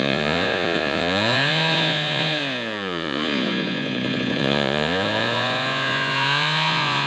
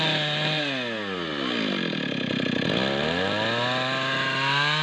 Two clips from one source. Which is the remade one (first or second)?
first